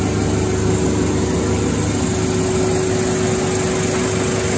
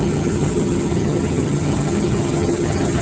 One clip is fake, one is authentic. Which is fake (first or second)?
second